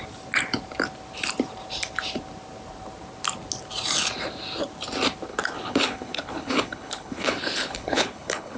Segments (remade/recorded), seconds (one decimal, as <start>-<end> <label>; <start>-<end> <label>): 0.0-5.3 recorded; 5.3-8.6 remade